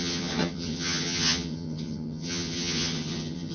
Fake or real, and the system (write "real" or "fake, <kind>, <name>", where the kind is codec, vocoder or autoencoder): fake, vocoder, HiFi-GAN